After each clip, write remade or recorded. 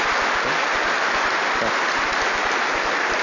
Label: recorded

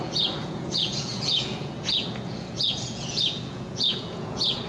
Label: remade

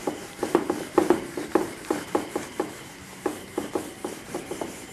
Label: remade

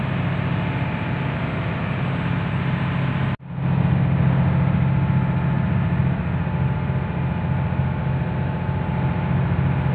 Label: recorded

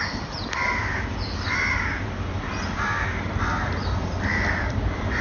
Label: recorded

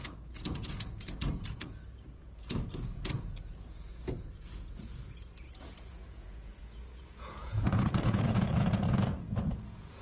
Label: remade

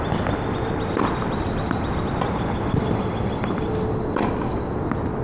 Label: recorded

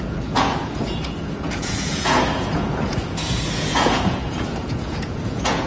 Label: remade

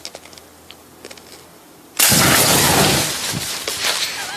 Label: recorded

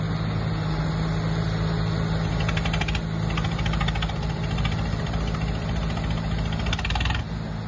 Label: recorded